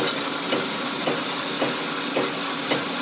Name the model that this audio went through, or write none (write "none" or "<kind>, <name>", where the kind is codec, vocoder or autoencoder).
none